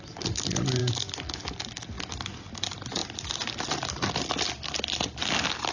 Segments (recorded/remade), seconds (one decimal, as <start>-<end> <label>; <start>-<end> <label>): 0.0-5.7 recorded